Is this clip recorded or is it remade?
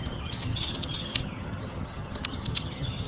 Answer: remade